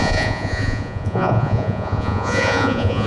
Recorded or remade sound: remade